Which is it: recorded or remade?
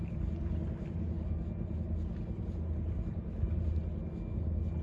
recorded